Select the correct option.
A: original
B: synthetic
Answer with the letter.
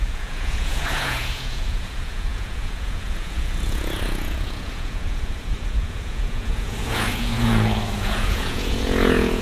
B